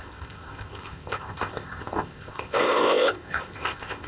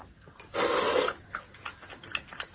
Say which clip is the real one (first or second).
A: second